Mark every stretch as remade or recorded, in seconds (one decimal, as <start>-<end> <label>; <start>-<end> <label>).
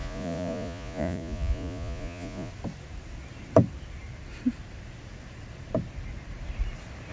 0.0-2.5 remade; 2.5-7.1 recorded